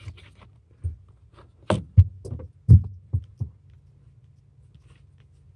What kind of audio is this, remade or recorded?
recorded